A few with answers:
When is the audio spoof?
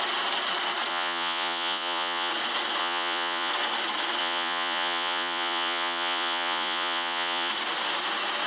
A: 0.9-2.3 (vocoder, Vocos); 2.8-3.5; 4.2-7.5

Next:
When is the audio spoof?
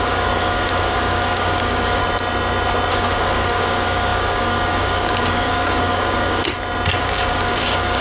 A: 0.0-2.0 (codec, DAC); 2.9-6.4; 7.0-8.0